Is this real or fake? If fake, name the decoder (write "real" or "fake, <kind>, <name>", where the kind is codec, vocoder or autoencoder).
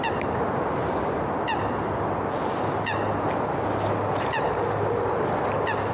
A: real